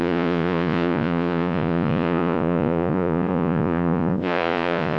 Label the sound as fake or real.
fake